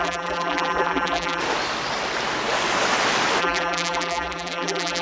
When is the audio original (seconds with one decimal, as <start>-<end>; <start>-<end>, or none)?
1.4-3.4